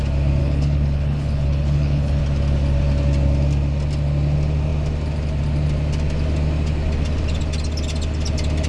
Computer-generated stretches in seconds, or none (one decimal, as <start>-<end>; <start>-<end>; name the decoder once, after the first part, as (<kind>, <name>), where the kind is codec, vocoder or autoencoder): 0.4-2.2 (codec, HILCodec)